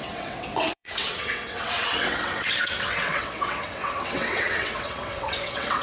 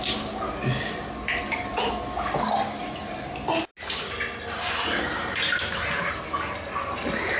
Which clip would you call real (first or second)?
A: second